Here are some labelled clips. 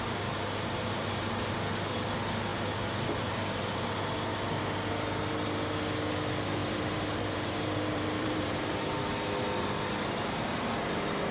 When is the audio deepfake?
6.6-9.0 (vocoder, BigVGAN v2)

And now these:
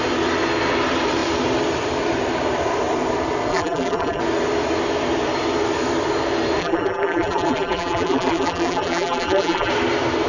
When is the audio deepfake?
3.5-4.2 (vocoder, BigVGAN v2); 6.6-9.7